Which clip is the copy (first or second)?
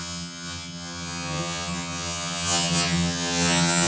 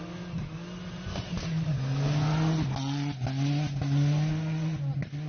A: first